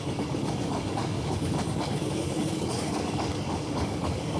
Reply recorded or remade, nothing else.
remade